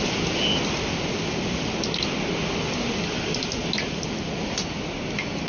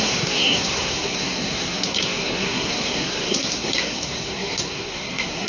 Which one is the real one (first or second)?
first